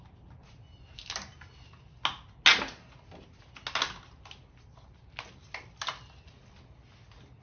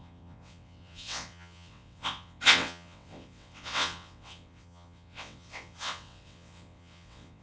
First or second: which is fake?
second